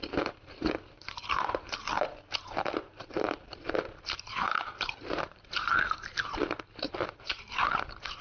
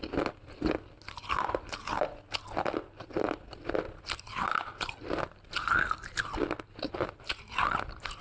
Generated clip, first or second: first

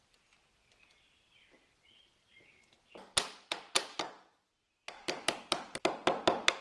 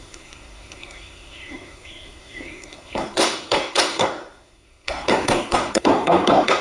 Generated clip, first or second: second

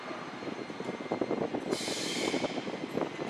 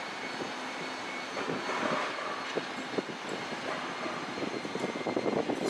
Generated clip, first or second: second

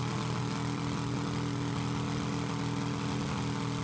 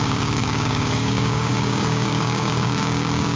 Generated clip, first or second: second